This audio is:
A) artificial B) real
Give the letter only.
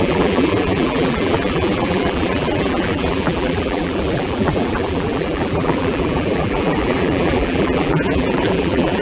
A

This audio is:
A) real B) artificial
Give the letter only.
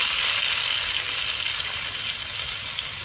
A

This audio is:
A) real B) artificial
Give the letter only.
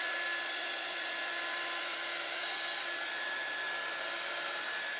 A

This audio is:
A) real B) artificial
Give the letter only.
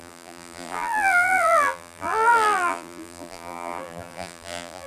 B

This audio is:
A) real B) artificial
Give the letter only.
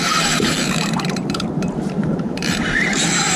B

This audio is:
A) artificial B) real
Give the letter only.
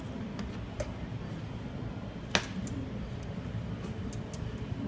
B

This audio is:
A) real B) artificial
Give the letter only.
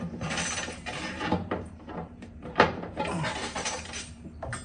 B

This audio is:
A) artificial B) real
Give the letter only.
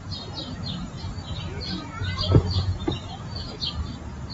B